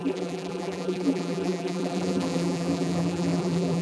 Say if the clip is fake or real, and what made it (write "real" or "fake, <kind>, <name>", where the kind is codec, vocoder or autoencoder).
fake, vocoder, BigVGAN v2